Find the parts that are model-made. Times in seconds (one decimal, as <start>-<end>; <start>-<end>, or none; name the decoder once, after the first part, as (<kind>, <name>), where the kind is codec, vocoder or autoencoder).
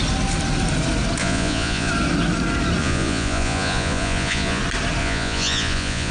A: 1.2-1.9 (vocoder, Vocos); 2.8-4.6; 5.0-6.1